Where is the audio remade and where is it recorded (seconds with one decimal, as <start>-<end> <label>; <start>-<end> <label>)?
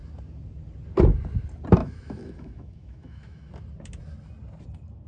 0.0-1.8 recorded; 1.8-3.5 remade; 3.5-5.1 recorded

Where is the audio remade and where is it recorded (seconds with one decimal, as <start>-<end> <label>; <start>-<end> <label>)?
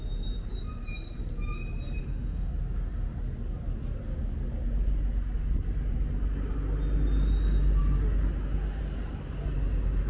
0.0-2.0 recorded; 2.0-2.5 remade; 2.5-10.1 recorded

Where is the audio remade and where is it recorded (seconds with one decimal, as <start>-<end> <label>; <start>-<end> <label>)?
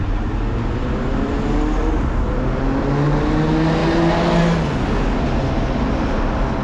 0.0-6.6 recorded